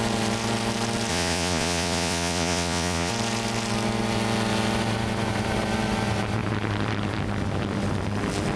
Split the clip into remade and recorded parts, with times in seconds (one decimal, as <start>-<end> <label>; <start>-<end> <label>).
0.0-1.1 recorded; 1.1-3.1 remade; 3.1-8.6 recorded